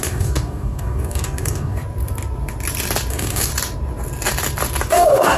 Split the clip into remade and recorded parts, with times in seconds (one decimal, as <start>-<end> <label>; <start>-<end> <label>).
0.0-1.8 remade; 1.8-3.1 recorded; 3.1-3.5 remade; 3.5-4.9 recorded; 4.9-5.4 remade